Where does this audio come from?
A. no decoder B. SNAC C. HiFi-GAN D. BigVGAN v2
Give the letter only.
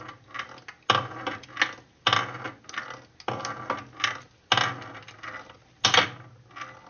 A